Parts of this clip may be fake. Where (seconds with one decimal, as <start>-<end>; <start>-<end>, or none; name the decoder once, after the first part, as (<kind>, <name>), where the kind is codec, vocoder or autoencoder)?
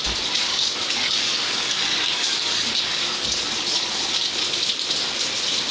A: 0.5-3.9 (codec, DAC)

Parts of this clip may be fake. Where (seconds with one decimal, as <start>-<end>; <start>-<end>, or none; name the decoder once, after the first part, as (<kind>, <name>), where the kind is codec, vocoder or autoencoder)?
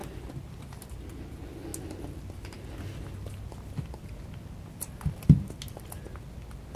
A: none